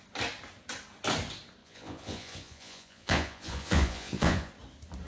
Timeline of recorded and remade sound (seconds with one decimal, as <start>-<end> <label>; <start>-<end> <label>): 0.0-1.6 recorded; 1.6-4.5 remade; 4.5-5.1 recorded